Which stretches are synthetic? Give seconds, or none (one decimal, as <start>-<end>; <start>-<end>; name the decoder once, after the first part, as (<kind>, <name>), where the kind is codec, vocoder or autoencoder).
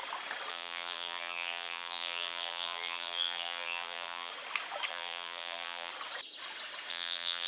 0.5-4.3 (vocoder, BigVGAN v2); 4.9-5.9; 6.9-7.5